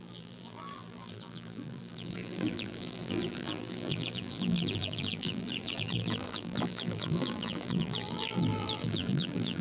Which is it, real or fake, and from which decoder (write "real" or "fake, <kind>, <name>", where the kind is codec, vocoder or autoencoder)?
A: fake, vocoder, BigVGAN v2